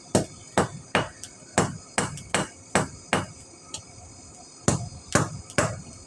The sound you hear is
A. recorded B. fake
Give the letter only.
A